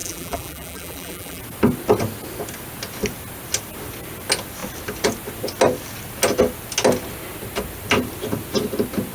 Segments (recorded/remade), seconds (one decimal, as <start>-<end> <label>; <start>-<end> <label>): 0.0-1.4 remade; 1.4-9.1 recorded